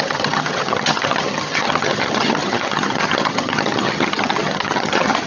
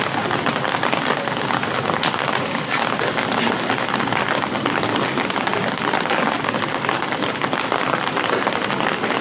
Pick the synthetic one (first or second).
first